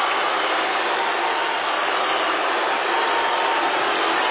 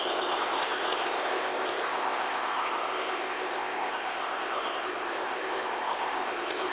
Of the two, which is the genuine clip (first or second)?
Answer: first